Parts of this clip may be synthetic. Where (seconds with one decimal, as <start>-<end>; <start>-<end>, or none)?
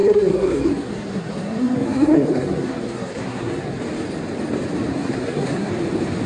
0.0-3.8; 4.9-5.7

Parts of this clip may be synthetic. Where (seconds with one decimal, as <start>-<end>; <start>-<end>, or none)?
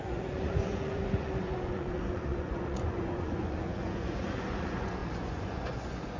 0.0-6.2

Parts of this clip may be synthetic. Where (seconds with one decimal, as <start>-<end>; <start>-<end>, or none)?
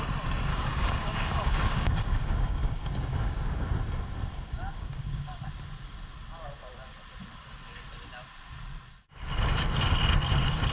0.5-3.7; 4.7-5.4